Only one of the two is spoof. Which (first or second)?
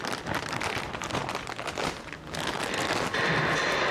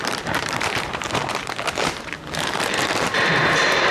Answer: second